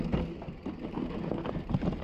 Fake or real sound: real